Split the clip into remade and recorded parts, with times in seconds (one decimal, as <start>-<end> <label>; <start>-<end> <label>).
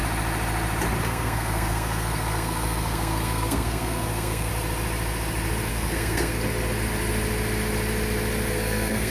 0.0-1.0 recorded; 1.0-4.5 remade; 4.5-5.7 recorded; 5.7-6.4 remade; 6.4-8.5 recorded; 8.5-9.1 remade